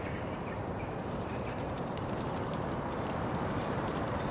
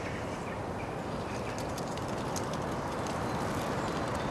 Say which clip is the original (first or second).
second